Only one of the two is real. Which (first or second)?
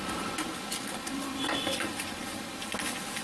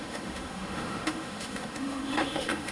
first